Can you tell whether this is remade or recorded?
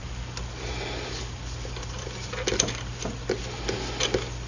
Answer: recorded